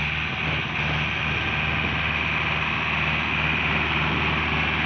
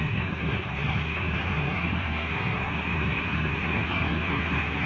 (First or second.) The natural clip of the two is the first